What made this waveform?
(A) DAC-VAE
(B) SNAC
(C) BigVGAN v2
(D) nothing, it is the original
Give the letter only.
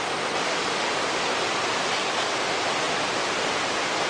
D